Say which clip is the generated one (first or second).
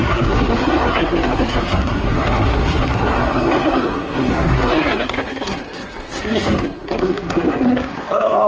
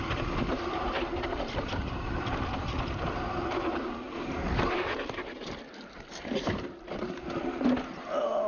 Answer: first